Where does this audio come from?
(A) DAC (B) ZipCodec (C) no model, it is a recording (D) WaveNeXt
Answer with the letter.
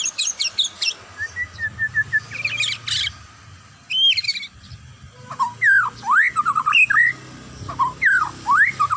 C